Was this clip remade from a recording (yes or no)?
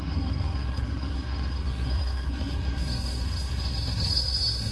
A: yes